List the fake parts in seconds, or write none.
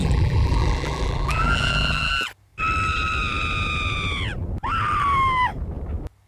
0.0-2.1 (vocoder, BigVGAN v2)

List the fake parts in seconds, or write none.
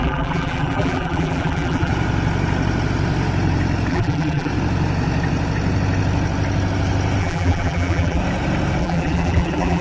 0.0-1.9 (vocoder, BigVGAN v2); 3.9-4.5; 7.2-8.2; 8.8-9.8